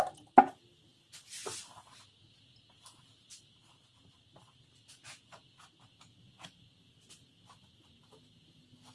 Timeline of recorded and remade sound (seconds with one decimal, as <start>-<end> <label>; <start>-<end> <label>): 0.0-8.9 recorded